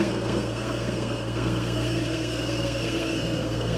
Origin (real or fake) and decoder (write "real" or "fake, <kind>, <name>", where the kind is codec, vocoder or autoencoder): fake, codec, SNAC